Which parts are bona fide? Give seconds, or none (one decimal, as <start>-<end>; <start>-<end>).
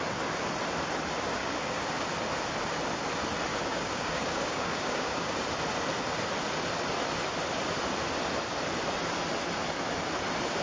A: 0.0-1.4; 1.9-3.5; 5.4-10.6